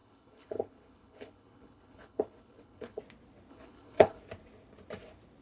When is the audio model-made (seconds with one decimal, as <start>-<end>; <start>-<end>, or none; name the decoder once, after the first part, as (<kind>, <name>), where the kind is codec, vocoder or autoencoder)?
0.0-3.0 (codec, HILCodec); 3.5-4.2